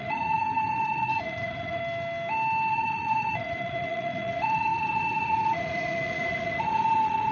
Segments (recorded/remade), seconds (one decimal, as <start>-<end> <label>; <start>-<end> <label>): 0.0-1.8 remade; 1.8-2.7 recorded; 2.7-7.3 remade